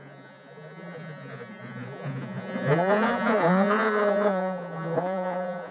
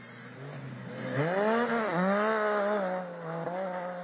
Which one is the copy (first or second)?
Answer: first